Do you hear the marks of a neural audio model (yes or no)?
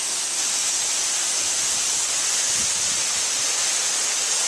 no